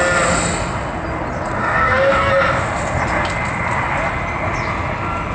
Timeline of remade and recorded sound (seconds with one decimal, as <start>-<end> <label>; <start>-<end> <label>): 0.0-1.6 recorded; 1.6-2.3 remade; 2.3-5.3 recorded